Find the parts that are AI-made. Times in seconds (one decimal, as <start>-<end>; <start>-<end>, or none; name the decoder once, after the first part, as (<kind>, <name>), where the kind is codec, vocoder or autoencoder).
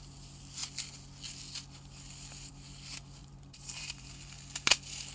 3.2-4.1 (vocoder, BigVGAN v2)